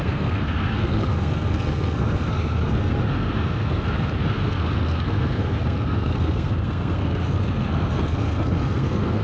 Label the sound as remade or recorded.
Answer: remade